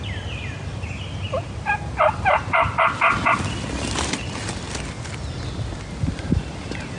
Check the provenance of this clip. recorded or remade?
recorded